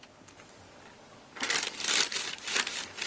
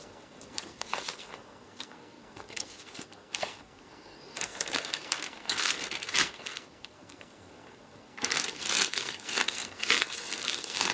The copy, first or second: second